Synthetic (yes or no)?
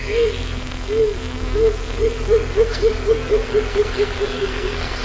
yes